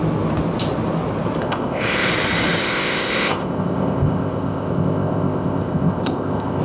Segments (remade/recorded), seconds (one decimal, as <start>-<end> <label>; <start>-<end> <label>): 0.0-1.4 recorded; 1.4-2.1 remade; 2.1-2.6 recorded; 2.6-6.6 remade